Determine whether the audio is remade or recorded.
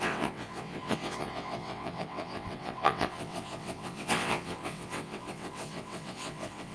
remade